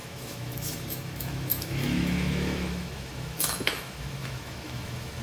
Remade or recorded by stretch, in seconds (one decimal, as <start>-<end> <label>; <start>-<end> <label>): 0.0-5.2 remade